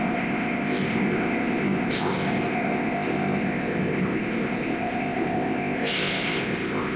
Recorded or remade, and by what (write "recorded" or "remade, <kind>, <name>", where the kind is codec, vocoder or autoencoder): remade, codec, ZipCodec